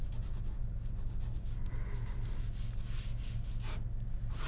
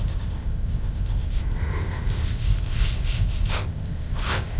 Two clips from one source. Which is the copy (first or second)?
second